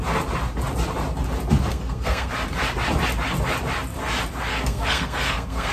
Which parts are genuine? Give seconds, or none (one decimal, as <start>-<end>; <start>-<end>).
0.0-1.7; 2.3-4.5